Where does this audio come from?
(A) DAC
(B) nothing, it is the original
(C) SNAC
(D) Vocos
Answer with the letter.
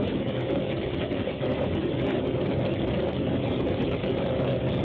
A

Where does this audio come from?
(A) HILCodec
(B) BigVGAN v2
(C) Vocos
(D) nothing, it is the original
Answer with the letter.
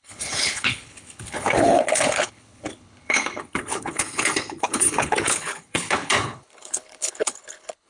A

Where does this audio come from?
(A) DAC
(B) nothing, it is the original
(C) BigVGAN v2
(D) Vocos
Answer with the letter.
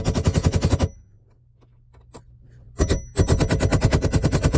B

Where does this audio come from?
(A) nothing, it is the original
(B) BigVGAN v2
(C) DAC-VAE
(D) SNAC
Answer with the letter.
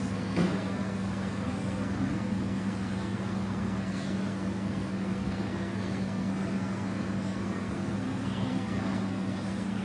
D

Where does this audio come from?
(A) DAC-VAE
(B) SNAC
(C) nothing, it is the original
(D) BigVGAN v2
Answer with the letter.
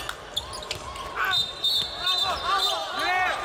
C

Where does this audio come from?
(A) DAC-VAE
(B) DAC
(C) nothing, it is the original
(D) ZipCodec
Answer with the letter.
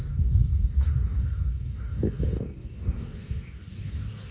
B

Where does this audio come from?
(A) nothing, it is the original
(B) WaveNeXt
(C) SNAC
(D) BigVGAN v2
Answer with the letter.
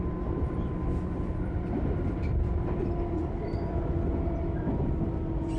D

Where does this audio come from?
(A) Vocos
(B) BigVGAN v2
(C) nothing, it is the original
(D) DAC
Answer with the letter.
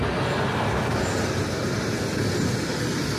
C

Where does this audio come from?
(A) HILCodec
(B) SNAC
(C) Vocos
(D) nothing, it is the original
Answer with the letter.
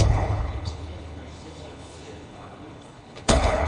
A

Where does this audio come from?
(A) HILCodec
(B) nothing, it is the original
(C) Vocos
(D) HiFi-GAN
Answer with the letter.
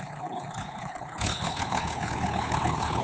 A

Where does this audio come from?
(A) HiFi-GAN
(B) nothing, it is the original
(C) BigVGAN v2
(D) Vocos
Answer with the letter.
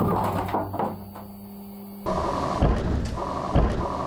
B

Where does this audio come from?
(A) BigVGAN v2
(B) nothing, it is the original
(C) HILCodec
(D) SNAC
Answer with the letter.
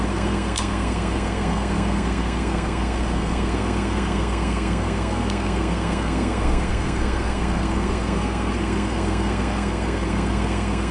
D